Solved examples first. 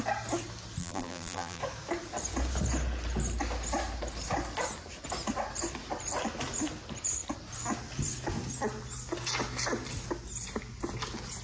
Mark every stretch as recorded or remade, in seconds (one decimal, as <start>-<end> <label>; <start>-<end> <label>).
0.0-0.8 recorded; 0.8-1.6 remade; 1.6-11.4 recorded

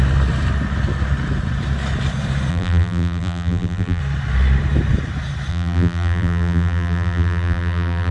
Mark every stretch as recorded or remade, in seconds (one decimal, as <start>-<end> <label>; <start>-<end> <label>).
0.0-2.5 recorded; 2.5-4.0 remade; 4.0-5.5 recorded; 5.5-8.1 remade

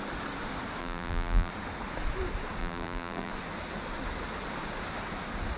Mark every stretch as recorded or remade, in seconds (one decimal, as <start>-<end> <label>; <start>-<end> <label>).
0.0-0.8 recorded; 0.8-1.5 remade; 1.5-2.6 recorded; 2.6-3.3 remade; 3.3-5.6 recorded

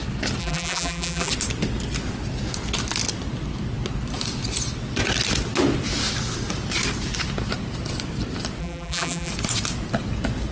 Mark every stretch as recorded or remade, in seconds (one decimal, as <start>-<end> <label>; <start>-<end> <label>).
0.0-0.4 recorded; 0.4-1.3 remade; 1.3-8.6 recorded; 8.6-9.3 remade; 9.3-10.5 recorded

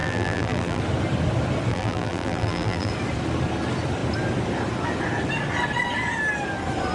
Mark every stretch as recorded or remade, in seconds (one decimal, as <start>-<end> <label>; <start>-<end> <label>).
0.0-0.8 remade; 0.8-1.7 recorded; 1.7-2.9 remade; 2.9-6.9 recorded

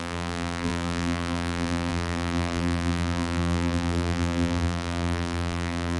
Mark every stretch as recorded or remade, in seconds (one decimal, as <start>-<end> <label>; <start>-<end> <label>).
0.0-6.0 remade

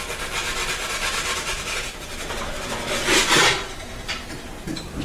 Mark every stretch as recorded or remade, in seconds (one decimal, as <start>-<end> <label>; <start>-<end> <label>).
0.0-0.4 recorded; 0.4-3.4 remade; 3.4-5.0 recorded

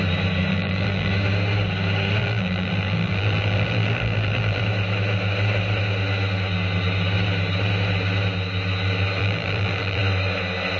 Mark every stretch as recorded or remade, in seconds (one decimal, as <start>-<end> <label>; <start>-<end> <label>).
0.0-0.5 recorded; 0.5-1.1 remade; 1.1-2.2 recorded; 2.2-4.6 remade; 4.6-9.2 recorded; 9.2-10.0 remade; 10.0-10.8 recorded